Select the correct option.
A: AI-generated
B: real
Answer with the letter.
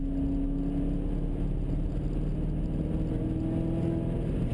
B